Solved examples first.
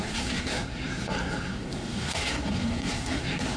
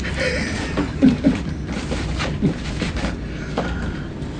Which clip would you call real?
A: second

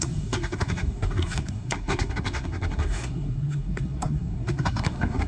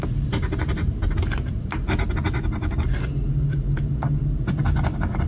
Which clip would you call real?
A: second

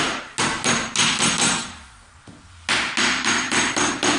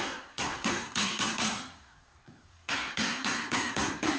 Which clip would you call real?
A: first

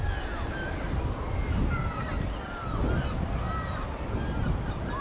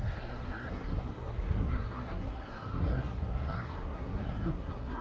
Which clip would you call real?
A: first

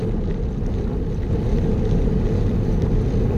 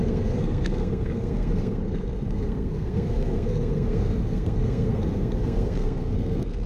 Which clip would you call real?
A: first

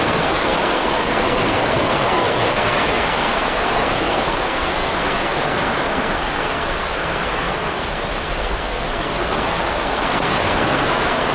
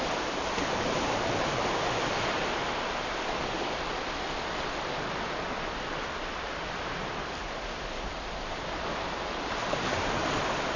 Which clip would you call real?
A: second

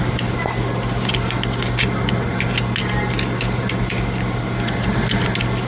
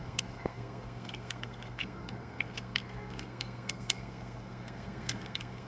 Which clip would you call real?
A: first